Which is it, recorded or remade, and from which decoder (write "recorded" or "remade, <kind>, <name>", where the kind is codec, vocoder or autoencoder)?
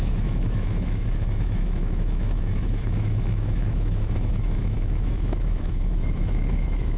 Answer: remade, autoencoder, DAC-VAE